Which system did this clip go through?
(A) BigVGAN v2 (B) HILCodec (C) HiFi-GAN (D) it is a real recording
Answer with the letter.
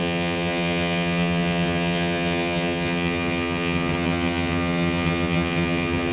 C